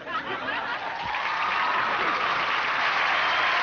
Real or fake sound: real